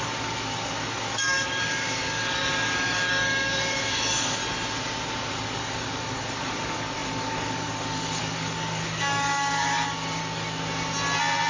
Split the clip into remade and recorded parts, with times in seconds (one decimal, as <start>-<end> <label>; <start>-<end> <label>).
0.0-4.4 remade; 4.4-5.3 recorded; 5.3-10.2 remade; 10.2-11.5 recorded